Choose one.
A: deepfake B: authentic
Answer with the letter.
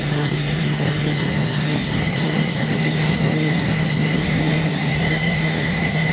A